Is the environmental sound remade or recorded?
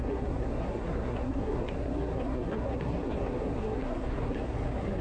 remade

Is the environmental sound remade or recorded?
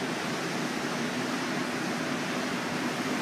recorded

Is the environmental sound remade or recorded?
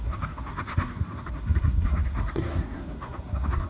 remade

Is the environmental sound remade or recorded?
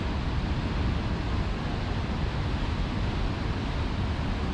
recorded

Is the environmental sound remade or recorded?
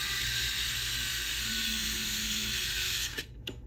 remade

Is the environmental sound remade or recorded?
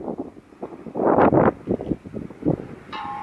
recorded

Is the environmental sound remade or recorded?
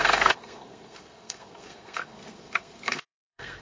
remade